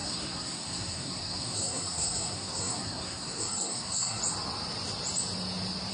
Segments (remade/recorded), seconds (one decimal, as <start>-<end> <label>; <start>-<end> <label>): 0.0-4.2 remade; 4.2-5.9 recorded